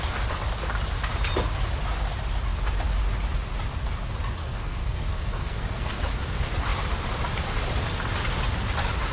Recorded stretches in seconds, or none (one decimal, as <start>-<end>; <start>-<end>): 0.0-4.4; 6.0-9.1